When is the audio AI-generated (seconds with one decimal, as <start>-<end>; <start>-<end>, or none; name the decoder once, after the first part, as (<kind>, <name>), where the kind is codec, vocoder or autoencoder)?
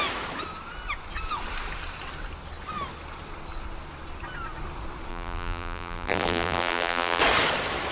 5.1-7.2 (vocoder, BigVGAN v2)